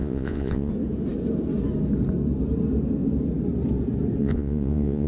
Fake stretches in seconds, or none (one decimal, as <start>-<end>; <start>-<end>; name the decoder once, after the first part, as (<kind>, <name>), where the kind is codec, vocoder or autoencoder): 0.0-0.7 (vocoder, Vocos); 4.2-5.1